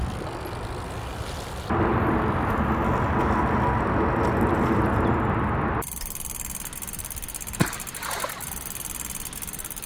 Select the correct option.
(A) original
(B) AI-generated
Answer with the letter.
A